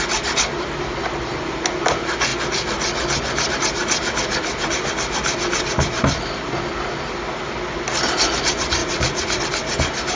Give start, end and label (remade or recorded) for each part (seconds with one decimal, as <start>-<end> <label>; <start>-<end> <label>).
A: 0.0-8.8 recorded; 8.8-9.4 remade; 9.4-10.2 recorded